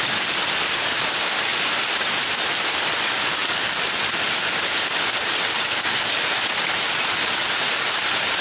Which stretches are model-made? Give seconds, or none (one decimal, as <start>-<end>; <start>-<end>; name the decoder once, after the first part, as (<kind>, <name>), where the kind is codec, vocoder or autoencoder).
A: none